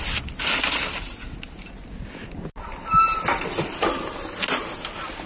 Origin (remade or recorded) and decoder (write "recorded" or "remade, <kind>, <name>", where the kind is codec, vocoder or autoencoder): recorded